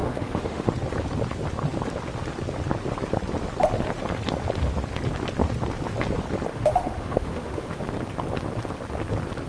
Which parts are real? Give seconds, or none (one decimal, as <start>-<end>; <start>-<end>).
0.7-6.5; 7.8-9.5